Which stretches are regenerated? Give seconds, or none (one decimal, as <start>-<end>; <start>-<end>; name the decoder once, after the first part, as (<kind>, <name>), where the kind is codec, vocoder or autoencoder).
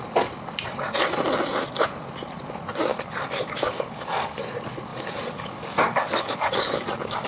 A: 2.9-4.4 (codec, DAC); 4.9-7.3